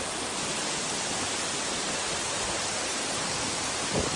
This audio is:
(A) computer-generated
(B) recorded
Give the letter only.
B